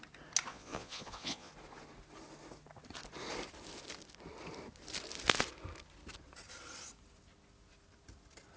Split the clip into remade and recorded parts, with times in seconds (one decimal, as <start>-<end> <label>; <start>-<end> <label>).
0.0-0.5 recorded; 0.5-1.5 remade; 1.5-8.6 recorded